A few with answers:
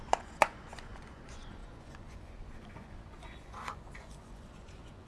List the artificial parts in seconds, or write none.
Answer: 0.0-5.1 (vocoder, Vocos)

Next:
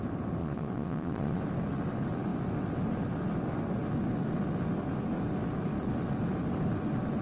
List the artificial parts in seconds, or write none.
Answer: 0.4-1.4 (vocoder, Vocos)

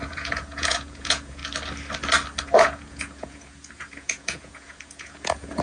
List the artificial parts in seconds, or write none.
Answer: 0.0-1.4 (vocoder, Vocos); 2.4-5.6

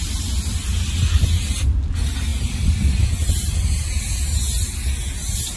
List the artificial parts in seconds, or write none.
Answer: none